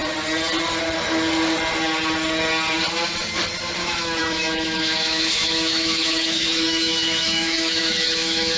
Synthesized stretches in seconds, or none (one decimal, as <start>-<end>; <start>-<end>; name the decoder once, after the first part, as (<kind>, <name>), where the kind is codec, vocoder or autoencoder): 3.8-8.6 (autoencoder, DAC-VAE)